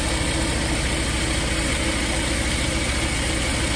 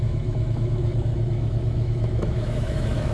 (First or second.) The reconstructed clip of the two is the second